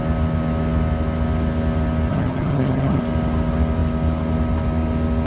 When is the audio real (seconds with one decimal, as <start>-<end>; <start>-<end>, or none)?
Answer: 0.0-2.1; 3.0-5.3